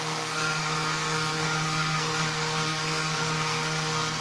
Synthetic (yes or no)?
yes